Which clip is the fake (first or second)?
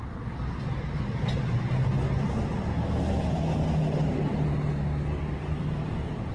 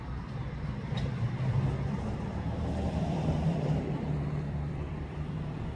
second